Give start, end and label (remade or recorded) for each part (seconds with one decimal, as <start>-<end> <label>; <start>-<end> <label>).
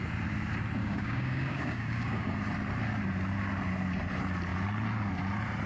0.0-0.8 recorded; 0.8-2.3 remade; 2.3-5.7 recorded